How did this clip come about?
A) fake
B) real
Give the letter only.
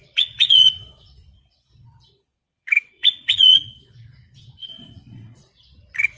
A